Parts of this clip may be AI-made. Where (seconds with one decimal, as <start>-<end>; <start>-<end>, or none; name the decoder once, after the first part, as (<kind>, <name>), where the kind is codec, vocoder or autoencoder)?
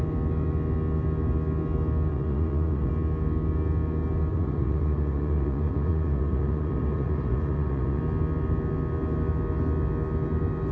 2.1-2.9 (vocoder, Vocos); 4.3-8.0